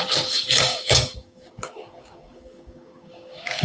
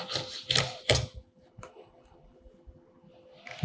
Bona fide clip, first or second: second